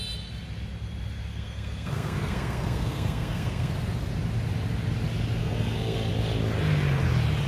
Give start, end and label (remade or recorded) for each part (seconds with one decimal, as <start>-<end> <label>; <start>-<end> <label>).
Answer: 0.0-1.3 recorded; 1.3-3.7 remade; 3.7-5.4 recorded; 5.4-6.1 remade; 6.1-7.5 recorded